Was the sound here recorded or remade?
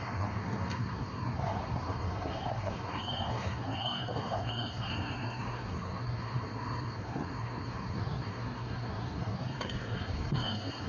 remade